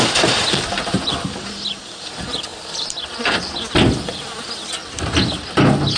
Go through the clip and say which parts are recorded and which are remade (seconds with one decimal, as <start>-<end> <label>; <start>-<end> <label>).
0.0-2.5 recorded; 2.5-5.5 remade; 5.5-6.0 recorded